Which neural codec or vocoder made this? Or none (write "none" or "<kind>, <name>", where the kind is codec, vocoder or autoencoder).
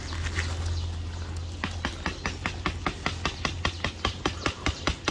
none